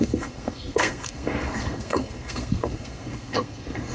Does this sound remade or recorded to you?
remade